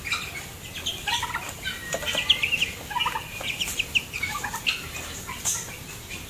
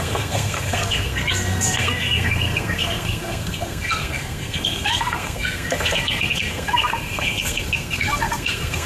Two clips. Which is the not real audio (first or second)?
second